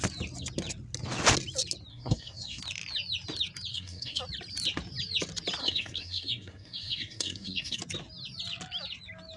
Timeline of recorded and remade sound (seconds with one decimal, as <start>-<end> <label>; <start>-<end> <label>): 0.0-1.9 recorded; 1.9-2.6 remade; 2.6-3.7 recorded; 3.7-4.2 remade; 4.2-5.6 recorded; 5.6-7.8 remade; 7.8-9.4 recorded